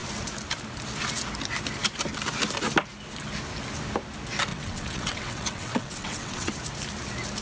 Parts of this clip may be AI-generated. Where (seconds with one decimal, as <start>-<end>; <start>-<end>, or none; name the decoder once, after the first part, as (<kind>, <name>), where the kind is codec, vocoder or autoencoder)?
4.5-6.5 (vocoder, WaveNeXt)